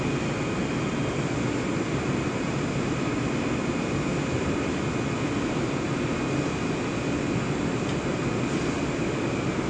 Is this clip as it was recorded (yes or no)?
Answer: yes